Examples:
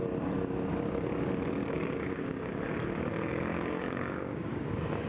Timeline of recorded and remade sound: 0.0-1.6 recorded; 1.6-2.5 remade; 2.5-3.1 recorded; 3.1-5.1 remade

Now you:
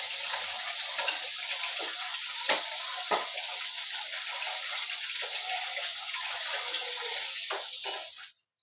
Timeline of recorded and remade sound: 0.0-8.6 recorded

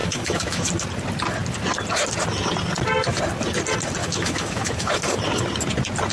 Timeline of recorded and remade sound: 0.0-0.7 remade; 0.7-4.0 recorded; 4.0-4.9 remade; 4.9-6.1 recorded

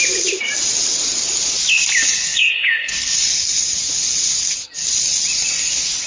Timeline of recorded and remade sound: 0.0-2.3 recorded; 2.3-3.0 remade; 3.0-6.1 recorded